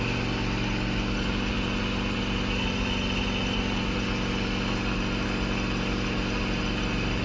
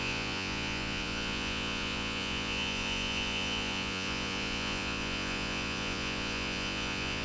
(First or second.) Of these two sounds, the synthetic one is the second